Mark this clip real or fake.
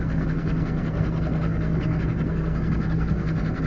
fake